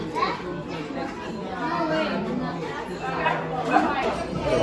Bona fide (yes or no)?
yes